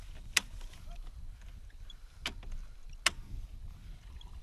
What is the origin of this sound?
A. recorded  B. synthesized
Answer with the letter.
A